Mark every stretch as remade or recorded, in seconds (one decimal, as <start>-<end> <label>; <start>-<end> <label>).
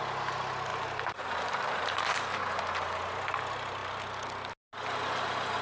0.0-0.7 recorded; 0.7-2.6 remade; 2.6-5.6 recorded